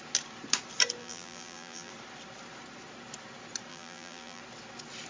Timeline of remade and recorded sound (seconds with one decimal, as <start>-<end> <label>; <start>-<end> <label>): 0.0-1.0 recorded; 1.0-1.9 remade; 1.9-3.7 recorded; 3.7-4.4 remade; 4.4-5.1 recorded